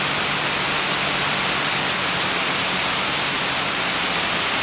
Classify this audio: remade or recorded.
recorded